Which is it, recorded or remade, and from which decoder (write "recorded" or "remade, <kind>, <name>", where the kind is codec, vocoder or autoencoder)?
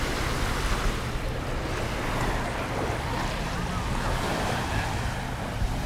recorded